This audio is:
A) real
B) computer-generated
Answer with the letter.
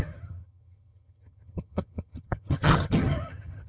B